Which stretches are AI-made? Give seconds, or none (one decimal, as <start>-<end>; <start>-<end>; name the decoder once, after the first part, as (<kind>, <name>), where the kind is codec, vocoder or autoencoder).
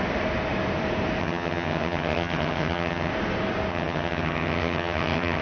1.2-3.1 (vocoder, HiFi-GAN); 3.7-5.4